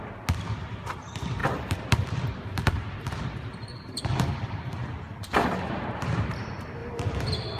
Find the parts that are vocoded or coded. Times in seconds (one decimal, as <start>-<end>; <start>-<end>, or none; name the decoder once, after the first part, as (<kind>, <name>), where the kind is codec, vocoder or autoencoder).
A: 1.4-6.0 (vocoder, BigVGAN v2); 6.8-7.6